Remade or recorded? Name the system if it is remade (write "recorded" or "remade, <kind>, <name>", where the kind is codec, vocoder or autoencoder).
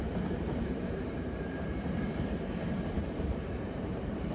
remade, vocoder, BigVGAN v2